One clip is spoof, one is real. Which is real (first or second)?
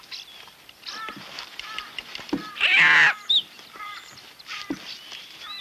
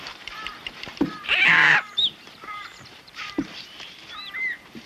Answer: first